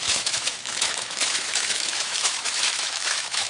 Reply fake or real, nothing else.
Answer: fake